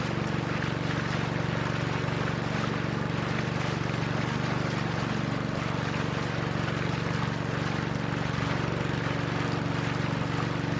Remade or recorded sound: recorded